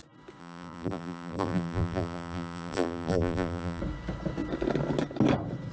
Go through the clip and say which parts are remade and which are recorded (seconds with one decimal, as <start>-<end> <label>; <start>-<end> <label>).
0.0-0.4 recorded; 0.4-3.8 remade; 3.8-5.7 recorded